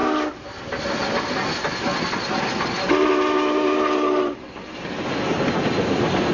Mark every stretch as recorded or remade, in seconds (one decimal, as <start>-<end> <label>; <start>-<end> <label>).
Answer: 0.0-6.3 recorded